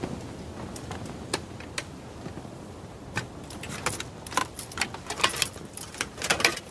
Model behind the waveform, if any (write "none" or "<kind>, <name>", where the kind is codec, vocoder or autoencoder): none